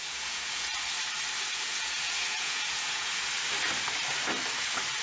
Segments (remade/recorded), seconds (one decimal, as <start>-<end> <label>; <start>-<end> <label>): 0.0-0.7 remade; 0.7-1.5 recorded; 1.5-3.2 remade; 3.2-5.0 recorded